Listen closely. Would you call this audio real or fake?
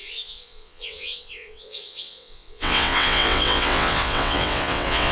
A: fake